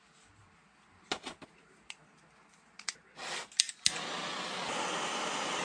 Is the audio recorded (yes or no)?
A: yes